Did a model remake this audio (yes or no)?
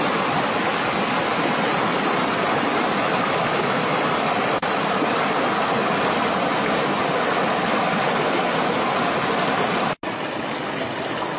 no